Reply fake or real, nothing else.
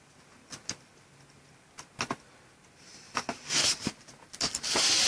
real